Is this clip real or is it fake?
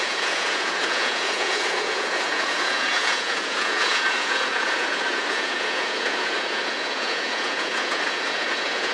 fake